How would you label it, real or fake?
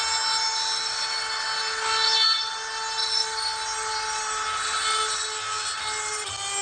real